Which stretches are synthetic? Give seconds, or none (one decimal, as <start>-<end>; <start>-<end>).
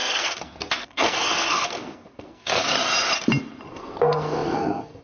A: 0.0-2.7; 3.7-5.0